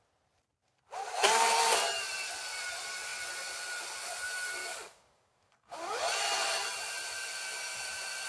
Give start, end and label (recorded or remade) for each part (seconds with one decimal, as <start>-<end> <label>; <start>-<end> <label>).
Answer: 0.0-4.6 recorded; 4.6-6.0 remade; 6.0-8.3 recorded